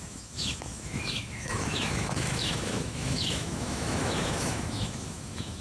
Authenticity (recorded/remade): remade